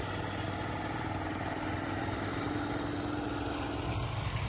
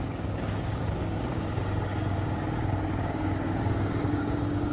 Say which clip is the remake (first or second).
second